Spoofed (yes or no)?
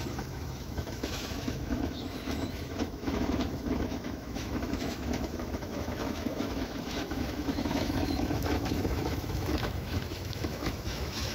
yes